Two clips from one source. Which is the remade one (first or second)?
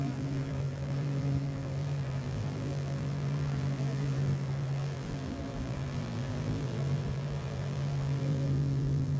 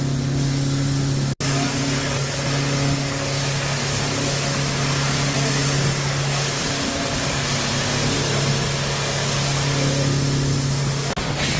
first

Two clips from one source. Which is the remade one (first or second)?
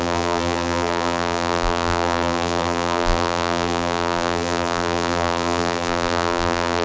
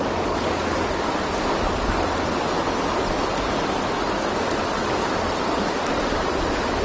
first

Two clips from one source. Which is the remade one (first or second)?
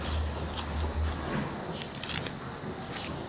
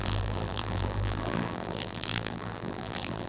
second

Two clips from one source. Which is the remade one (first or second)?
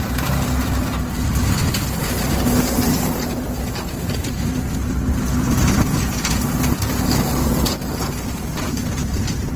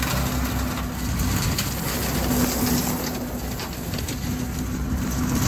first